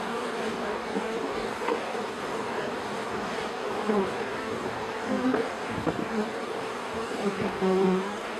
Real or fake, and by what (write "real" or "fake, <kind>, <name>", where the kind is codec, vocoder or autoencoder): fake, codec, DAC